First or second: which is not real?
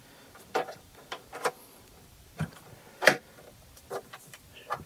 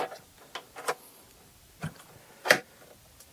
first